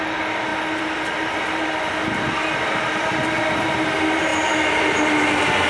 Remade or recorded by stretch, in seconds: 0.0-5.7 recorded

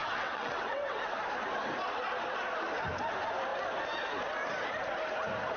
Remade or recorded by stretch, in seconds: 0.0-1.2 remade; 1.2-5.6 recorded

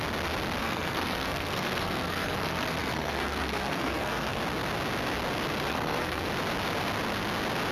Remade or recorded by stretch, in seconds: 0.0-0.6 recorded; 0.6-4.4 remade; 4.4-5.7 recorded; 5.7-6.2 remade; 6.2-7.7 recorded

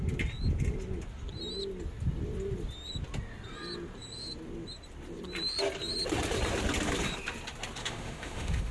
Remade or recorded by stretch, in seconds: 0.0-7.8 recorded; 7.8-8.7 remade